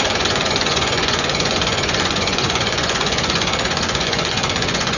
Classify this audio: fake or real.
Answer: fake